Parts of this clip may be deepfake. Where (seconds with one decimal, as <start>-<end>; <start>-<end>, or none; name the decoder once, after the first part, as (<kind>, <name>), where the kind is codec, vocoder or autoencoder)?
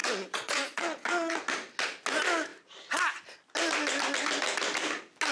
0.0-1.3 (vocoder, Vocos)